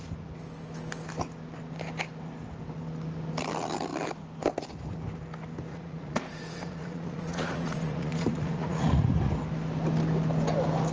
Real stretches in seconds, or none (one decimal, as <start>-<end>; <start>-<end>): 0.0-5.7; 9.3-10.9